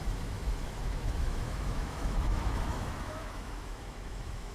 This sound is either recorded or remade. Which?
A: remade